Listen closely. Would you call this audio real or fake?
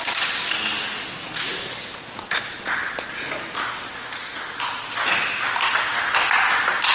real